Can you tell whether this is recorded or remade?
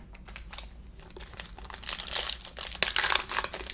recorded